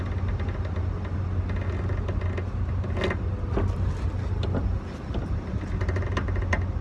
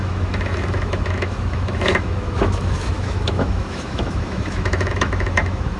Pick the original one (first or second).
first